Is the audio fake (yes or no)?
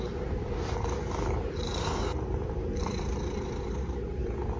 yes